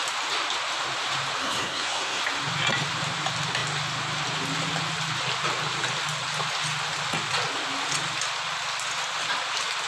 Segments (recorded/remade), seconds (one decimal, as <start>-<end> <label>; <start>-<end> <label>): 0.0-1.4 recorded; 1.4-2.2 remade; 2.2-9.9 recorded